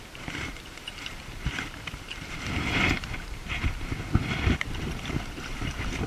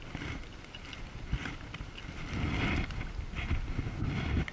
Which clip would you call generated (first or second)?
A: first